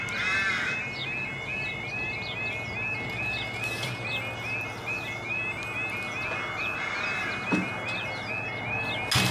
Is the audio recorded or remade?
recorded